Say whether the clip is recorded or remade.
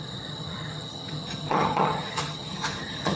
remade